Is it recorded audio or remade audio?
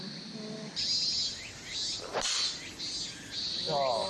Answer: recorded